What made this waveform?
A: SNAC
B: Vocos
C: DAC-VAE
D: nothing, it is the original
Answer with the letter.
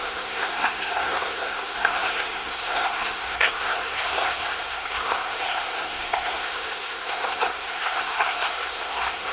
A